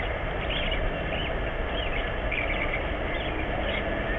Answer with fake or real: real